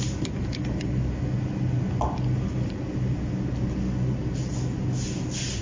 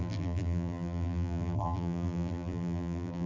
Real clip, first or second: first